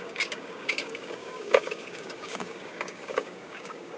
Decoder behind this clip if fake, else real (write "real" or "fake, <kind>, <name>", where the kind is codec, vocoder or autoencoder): fake, codec, DAC